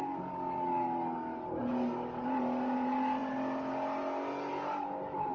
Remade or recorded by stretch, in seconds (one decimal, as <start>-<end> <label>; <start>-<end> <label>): 0.0-5.3 recorded